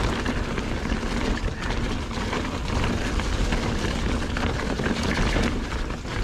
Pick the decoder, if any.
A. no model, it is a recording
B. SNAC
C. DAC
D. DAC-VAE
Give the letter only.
A